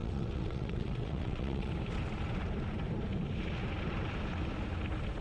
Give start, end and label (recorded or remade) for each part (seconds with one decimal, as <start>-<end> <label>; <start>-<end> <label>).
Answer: 0.0-1.7 remade; 1.7-5.2 recorded